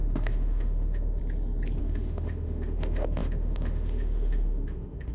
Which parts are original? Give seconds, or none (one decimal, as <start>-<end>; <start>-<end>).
1.2-1.8